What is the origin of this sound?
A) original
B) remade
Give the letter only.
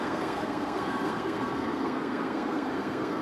B